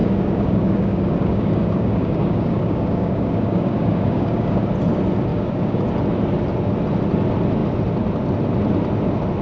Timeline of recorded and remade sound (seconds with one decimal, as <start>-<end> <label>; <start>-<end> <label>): 0.0-4.6 remade; 4.6-5.3 recorded; 5.3-5.9 remade; 5.9-9.4 recorded